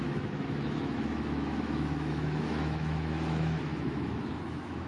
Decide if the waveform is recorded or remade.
remade